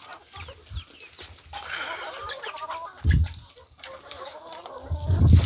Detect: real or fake real